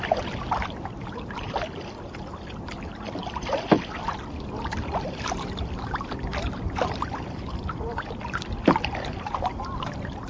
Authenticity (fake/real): fake